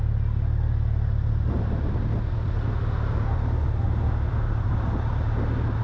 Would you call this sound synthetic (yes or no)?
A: no